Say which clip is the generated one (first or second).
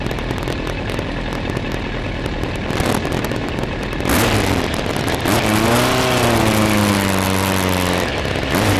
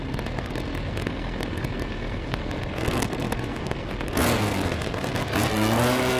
second